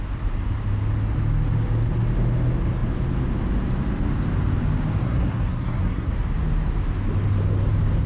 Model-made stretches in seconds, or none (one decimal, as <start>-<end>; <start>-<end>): 5.0-6.1